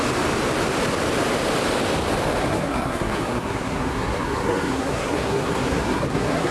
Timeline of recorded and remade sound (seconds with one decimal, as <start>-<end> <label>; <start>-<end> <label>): 0.0-2.4 recorded; 2.4-6.5 remade